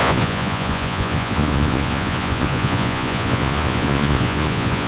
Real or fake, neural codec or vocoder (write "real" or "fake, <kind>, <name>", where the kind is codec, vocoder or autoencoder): fake, vocoder, Vocos